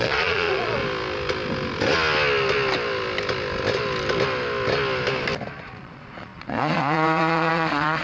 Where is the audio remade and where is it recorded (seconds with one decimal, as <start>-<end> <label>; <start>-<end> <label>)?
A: 0.0-0.8 remade; 0.8-5.6 recorded; 5.6-8.0 remade